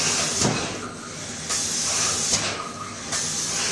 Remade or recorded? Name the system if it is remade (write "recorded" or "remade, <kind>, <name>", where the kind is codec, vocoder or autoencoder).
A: recorded